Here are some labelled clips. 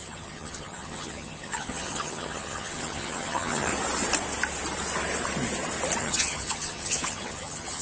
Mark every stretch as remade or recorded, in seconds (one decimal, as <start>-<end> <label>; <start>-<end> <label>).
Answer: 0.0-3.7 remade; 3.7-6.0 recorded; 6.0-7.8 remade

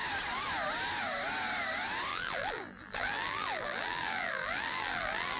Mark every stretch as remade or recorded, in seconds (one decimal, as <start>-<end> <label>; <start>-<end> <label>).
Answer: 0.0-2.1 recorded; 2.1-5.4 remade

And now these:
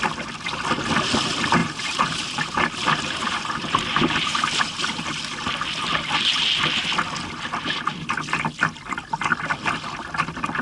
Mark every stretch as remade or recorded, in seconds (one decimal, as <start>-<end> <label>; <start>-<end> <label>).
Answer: 0.0-1.6 recorded; 1.6-5.1 remade; 5.1-10.6 recorded

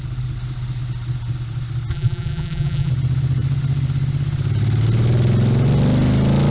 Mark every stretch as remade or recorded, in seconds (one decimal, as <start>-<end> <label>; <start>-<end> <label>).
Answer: 0.0-1.9 recorded; 1.9-2.9 remade; 2.9-6.5 recorded